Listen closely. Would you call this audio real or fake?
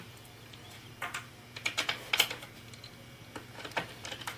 real